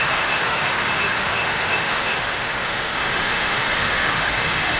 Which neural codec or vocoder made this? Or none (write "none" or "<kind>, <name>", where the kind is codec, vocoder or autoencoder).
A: autoencoder, DAC-VAE